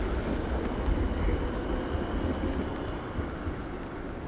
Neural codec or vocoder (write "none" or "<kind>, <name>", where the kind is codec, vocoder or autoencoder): none